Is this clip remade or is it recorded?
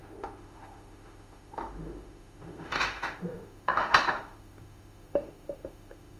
remade